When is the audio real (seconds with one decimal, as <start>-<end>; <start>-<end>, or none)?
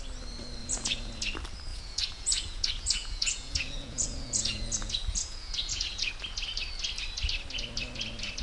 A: 0.0-0.6; 1.1-1.7; 6.1-8.4